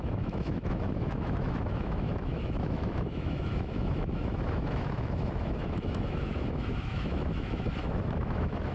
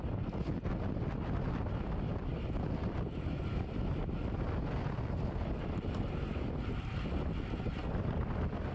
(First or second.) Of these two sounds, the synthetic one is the first